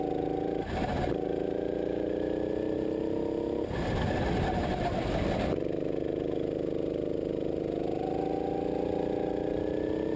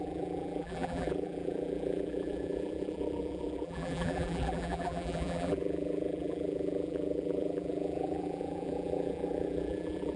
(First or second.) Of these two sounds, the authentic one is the first